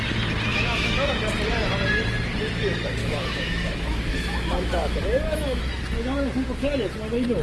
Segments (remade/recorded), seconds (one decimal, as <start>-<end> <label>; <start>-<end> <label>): 0.0-0.5 recorded; 0.5-1.1 remade; 1.1-3.0 recorded; 3.0-5.6 remade; 5.6-7.4 recorded